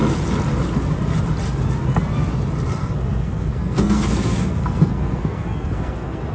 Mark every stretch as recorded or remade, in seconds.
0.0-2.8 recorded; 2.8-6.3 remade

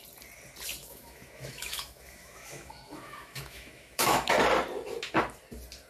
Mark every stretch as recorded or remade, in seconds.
0.0-0.8 recorded; 0.8-4.3 remade; 4.3-5.9 recorded

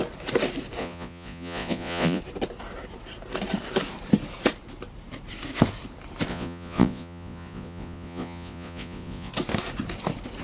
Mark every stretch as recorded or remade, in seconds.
0.0-0.8 recorded; 0.8-2.2 remade; 2.2-6.3 recorded; 6.3-9.3 remade; 9.3-10.4 recorded

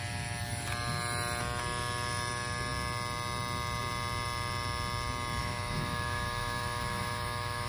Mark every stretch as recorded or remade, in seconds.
0.0-5.4 recorded; 5.4-7.7 remade

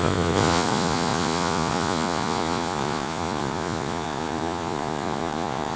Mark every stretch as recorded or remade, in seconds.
0.0-5.8 remade

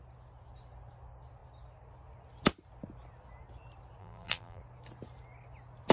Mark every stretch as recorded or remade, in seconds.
0.0-4.0 recorded; 4.0-4.6 remade; 4.6-5.9 recorded

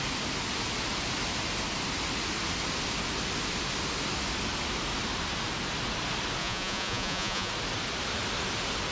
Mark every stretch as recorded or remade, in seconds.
0.0-6.4 recorded; 6.4-7.5 remade; 7.5-8.9 recorded

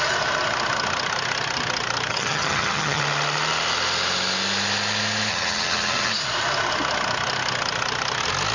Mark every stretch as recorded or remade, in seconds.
0.0-2.1 recorded; 2.1-3.0 remade; 3.0-5.3 recorded; 5.3-6.1 remade; 6.1-8.5 recorded